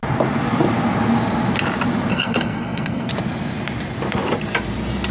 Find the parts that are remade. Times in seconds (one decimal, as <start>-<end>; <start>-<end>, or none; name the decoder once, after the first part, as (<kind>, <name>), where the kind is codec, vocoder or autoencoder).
2.1-3.1 (codec, SNAC)